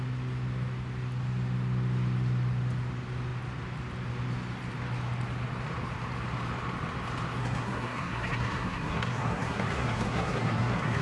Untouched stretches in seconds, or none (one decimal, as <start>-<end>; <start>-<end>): 0.0-7.4